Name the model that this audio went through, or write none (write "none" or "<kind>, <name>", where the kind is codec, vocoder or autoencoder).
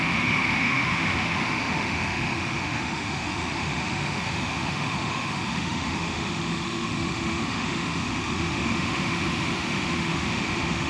autoencoder, DAC-VAE